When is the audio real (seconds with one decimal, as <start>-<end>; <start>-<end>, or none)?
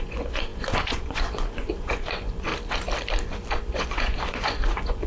2.5-3.7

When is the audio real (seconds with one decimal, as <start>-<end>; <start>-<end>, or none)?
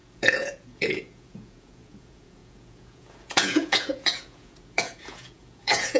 none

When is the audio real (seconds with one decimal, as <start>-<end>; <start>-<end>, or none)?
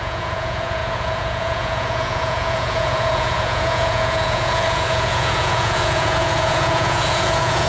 none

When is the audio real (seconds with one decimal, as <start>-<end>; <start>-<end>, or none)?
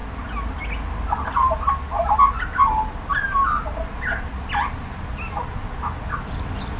0.0-6.8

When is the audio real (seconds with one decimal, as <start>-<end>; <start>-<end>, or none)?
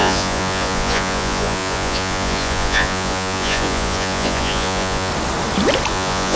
5.1-5.9